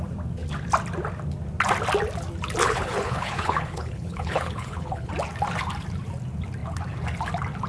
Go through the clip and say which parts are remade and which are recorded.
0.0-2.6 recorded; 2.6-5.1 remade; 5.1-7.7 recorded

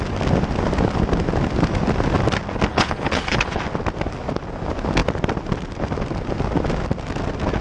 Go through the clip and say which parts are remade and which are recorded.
0.0-2.7 recorded; 2.7-3.6 remade; 3.6-7.6 recorded

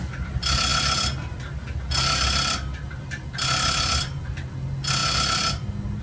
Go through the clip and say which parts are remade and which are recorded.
0.0-6.0 recorded

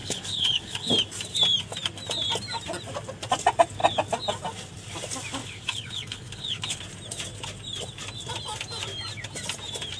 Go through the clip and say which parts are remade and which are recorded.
0.0-0.9 remade; 0.9-5.4 recorded; 5.4-6.8 remade; 6.8-10.0 recorded